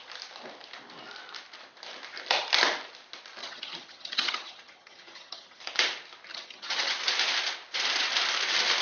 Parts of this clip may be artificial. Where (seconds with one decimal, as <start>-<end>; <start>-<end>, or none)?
3.4-5.6; 6.3-6.9